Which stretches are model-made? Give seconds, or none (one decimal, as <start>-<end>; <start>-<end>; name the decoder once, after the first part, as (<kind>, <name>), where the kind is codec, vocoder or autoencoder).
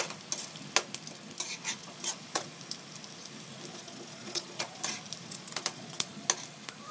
1.8-2.5 (vocoder, Vocos); 3.7-4.8; 5.2-6.1